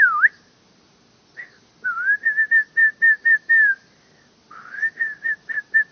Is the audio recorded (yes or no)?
yes